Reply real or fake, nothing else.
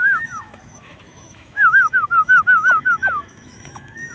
fake